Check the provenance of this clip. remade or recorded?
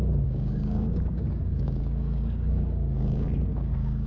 remade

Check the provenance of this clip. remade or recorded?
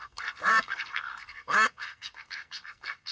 remade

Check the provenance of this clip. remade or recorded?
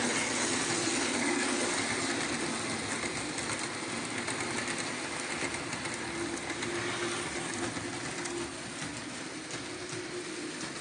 recorded